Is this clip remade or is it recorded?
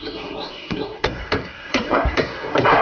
remade